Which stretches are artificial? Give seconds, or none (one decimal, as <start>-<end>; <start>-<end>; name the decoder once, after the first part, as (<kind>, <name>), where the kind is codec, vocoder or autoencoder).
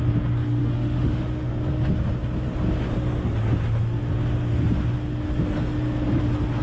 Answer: 0.6-1.5 (autoencoder, DAC-VAE)